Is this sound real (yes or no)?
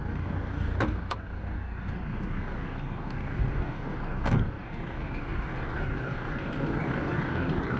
no